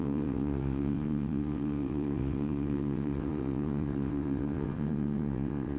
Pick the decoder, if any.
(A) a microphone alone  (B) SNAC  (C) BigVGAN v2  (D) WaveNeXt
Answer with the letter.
D